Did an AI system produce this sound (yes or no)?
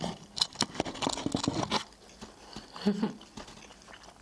no